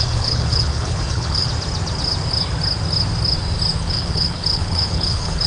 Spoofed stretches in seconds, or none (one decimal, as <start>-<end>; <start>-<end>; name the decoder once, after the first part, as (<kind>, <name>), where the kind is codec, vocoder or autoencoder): 0.0-1.5 (codec, HILCodec); 3.8-5.5